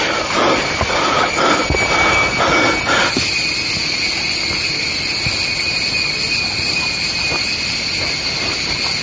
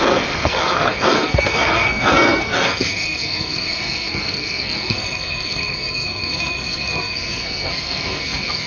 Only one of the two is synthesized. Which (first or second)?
second